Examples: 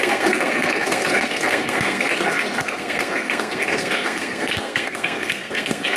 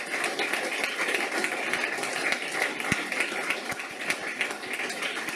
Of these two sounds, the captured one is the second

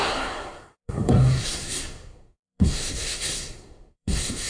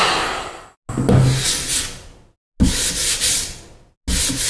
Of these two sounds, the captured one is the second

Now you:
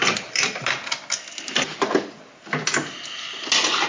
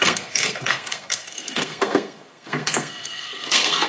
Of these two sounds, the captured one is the first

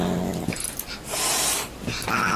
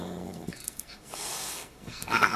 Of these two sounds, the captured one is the first